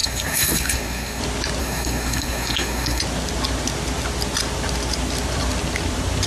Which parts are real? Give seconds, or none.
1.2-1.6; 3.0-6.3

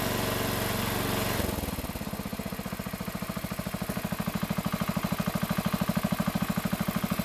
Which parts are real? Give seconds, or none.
0.0-7.2

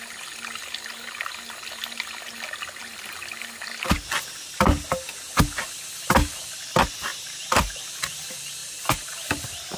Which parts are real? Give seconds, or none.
0.0-7.1; 7.8-8.6; 9.1-9.8

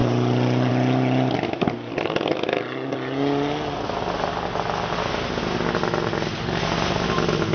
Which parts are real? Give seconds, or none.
0.0-7.5